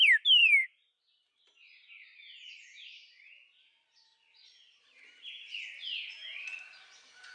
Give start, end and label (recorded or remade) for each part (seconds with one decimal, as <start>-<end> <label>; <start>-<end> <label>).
0.0-7.3 recorded